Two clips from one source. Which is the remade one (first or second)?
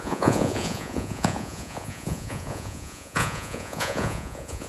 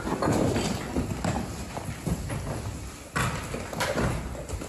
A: first